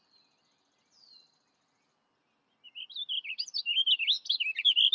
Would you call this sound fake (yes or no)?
yes